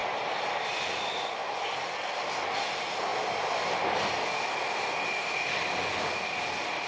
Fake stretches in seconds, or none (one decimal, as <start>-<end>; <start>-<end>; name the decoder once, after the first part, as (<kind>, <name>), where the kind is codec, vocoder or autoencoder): none